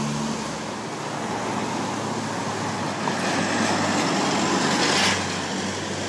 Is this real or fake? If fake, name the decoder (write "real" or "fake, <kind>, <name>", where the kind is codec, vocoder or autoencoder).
real